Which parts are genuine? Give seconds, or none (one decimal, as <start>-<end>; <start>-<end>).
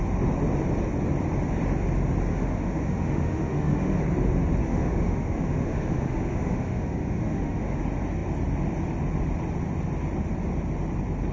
0.0-2.3; 4.0-4.6; 7.8-11.3